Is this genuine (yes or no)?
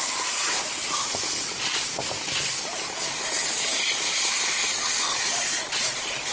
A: no